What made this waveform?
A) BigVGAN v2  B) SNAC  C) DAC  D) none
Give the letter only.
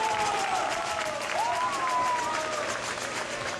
D